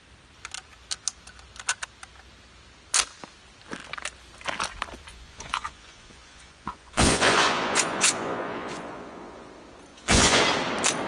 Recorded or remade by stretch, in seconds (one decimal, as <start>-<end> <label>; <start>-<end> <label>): 0.0-5.1 recorded; 5.1-9.5 remade; 9.5-9.9 recorded; 9.9-10.4 remade; 10.4-11.1 recorded